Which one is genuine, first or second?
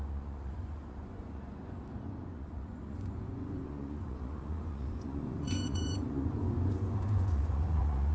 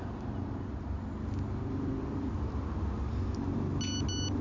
second